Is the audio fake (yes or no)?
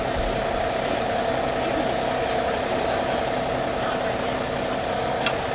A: no